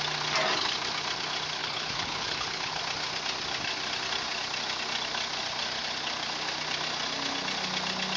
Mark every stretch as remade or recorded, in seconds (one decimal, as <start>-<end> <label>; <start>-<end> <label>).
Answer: 0.0-1.6 recorded; 1.6-2.8 remade; 2.8-8.2 recorded